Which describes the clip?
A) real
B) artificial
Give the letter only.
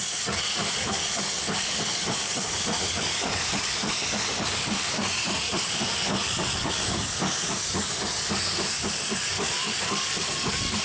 B